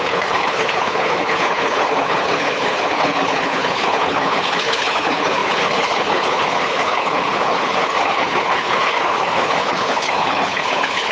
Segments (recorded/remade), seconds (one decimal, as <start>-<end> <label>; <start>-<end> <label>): 0.0-11.1 remade